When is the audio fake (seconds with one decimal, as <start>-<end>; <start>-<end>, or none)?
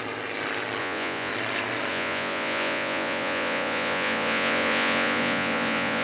0.8-1.3; 1.9-6.0